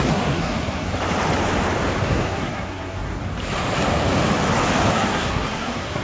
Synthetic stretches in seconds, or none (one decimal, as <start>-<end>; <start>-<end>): 0.0-0.9; 2.1-3.2; 4.9-6.0